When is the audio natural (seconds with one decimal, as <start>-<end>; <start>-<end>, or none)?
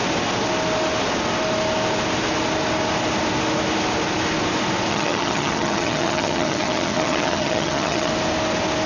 0.0-4.9; 8.1-8.9